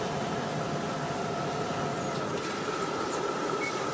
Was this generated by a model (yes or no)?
no